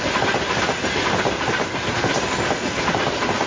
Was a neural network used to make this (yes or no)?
no